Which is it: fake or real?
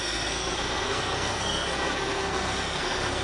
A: fake